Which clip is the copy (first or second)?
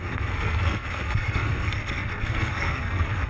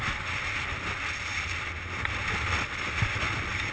first